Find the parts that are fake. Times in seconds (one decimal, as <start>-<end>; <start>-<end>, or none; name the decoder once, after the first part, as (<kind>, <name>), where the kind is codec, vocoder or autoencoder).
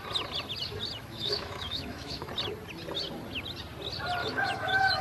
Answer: 1.0-2.3 (autoencoder, DAC-VAE); 4.2-5.0